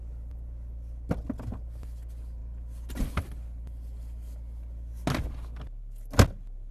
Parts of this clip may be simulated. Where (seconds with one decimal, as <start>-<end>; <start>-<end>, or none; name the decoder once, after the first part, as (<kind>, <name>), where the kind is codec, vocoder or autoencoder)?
none